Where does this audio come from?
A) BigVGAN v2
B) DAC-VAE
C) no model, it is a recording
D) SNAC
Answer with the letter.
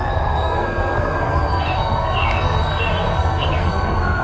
D